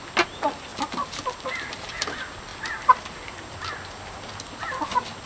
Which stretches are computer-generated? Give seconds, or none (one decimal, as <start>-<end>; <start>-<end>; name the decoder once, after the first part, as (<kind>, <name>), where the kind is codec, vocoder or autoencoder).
none